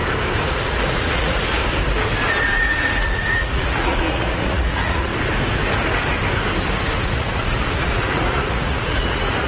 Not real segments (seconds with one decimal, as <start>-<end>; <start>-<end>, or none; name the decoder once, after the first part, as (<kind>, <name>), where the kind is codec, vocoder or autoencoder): 0.5-1.6 (vocoder, Vocos); 2.4-5.1; 7.0-9.5